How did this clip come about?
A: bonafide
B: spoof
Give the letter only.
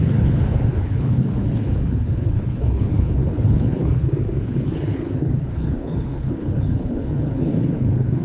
B